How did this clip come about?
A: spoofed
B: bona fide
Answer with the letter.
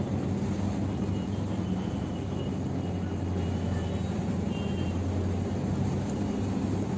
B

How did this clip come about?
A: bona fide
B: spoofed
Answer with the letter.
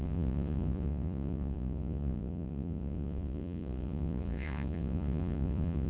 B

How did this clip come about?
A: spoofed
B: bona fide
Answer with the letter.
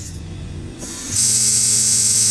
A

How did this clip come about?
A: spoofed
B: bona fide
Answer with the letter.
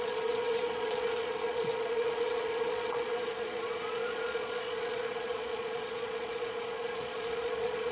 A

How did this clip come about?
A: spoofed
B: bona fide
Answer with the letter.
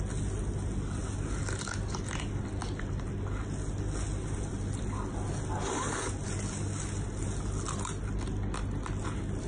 B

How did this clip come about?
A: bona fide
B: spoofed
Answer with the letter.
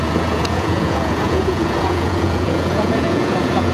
B